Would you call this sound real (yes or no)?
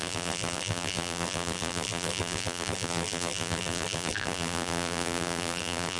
no